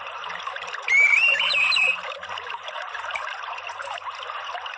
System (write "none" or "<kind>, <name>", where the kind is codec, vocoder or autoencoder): vocoder, BigVGAN v2